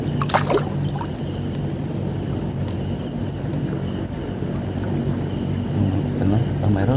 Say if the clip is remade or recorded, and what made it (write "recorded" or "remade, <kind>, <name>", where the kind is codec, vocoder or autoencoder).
recorded